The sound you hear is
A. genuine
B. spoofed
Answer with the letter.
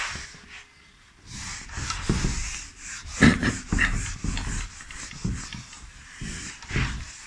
A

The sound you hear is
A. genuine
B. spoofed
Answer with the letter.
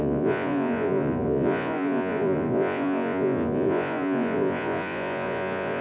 B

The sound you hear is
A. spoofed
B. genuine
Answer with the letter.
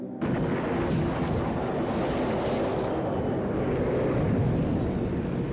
B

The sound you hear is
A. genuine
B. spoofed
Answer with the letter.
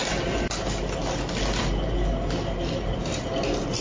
A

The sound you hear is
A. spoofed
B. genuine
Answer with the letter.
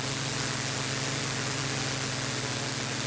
B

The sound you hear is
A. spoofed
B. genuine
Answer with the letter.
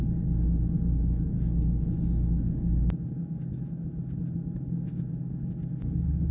B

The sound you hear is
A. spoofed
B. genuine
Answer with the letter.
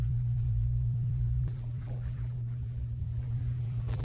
A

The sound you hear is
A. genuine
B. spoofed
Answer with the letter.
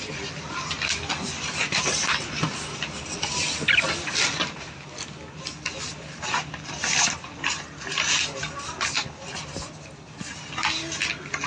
A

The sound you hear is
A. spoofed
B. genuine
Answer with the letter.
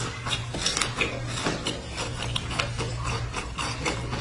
B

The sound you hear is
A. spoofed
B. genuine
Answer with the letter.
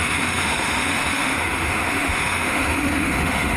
A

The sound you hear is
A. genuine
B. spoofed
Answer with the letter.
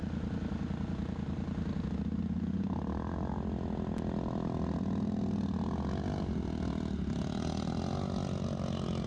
A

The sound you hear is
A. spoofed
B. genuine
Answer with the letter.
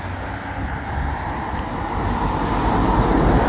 B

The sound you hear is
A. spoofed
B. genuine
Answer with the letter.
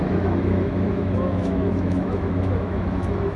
A